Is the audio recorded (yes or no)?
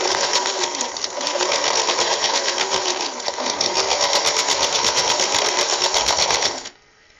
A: no